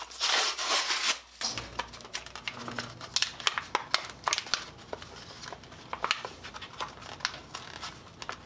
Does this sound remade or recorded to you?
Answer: recorded